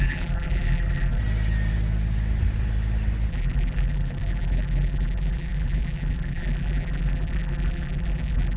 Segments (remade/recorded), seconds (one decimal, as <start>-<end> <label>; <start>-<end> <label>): 0.0-1.2 remade; 1.2-3.3 recorded; 3.3-8.6 remade